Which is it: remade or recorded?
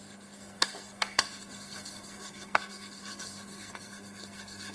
remade